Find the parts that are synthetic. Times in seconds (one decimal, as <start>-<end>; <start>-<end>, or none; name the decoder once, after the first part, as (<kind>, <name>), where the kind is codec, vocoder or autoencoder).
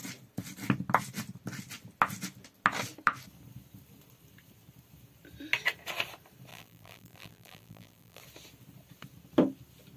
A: 6.5-8.2 (vocoder, BigVGAN v2)